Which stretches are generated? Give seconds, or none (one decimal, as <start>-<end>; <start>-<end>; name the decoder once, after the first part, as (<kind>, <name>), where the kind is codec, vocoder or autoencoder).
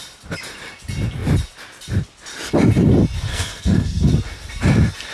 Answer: 3.3-4.1 (codec, SNAC)